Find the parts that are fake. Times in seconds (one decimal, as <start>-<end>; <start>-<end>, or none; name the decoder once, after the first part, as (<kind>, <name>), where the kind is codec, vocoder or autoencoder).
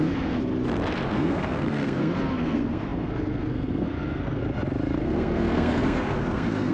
0.0-0.5 (codec, SNAC); 1.1-4.4; 5.0-6.7